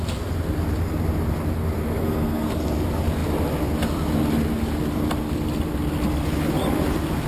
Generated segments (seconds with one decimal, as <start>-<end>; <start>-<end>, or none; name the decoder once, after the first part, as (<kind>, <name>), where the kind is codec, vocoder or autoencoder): 2.0-2.5 (codec, SNAC)